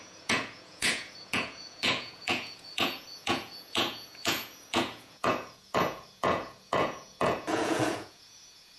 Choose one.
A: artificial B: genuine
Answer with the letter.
A